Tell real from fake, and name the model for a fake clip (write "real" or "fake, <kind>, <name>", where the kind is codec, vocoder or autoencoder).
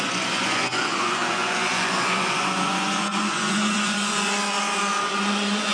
fake, vocoder, Vocos